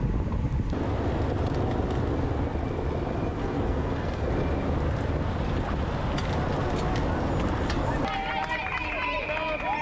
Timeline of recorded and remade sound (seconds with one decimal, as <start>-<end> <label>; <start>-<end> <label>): 0.0-3.4 recorded; 3.4-4.3 remade; 4.3-9.8 recorded